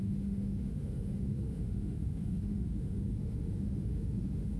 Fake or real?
fake